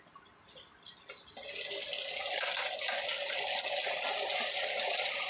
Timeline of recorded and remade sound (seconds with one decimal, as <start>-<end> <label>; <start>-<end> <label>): 0.0-5.3 recorded

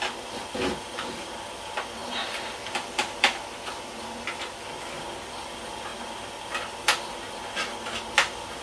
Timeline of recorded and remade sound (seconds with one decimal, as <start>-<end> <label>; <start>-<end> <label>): 0.0-2.0 recorded; 2.0-4.4 remade; 4.4-8.6 recorded

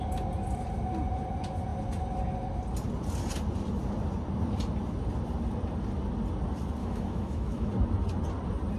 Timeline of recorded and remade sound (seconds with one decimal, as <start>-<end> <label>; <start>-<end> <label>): 0.0-6.8 recorded; 6.8-7.7 remade; 7.7-8.8 recorded

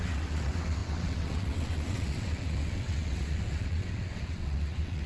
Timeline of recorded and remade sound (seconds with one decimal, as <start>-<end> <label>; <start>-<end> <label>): 0.0-5.1 remade

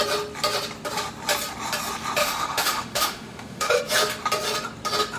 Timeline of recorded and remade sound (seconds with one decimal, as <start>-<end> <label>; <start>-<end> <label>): 0.0-2.2 recorded; 2.2-3.8 remade; 3.8-5.2 recorded

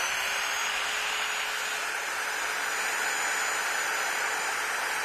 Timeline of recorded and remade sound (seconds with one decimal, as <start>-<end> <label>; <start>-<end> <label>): 0.0-0.6 remade; 0.6-3.6 recorded; 3.6-5.0 remade